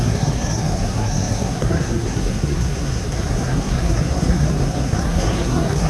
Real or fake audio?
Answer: fake